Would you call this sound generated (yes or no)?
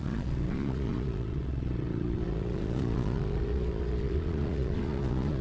yes